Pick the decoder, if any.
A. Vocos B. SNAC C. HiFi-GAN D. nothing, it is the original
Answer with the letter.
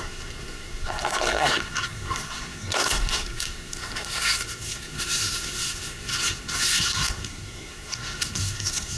B